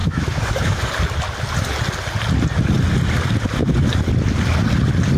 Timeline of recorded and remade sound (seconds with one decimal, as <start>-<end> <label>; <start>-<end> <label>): 0.0-0.8 remade; 0.8-5.2 recorded